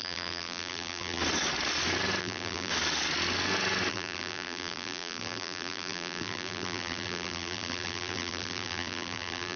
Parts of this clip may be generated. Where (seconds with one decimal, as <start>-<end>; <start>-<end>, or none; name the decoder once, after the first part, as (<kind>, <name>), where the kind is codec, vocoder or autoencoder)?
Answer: 0.0-1.2 (vocoder, BigVGAN v2); 2.2-2.7; 3.9-9.6